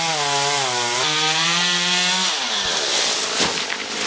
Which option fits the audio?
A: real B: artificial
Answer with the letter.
A